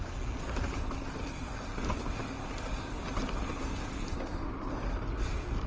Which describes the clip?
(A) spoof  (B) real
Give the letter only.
B